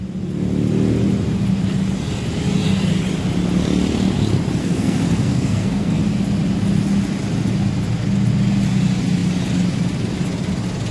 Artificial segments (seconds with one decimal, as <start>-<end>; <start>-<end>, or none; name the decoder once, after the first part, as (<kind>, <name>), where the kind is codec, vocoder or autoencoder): 4.6-6.0 (codec, SNAC)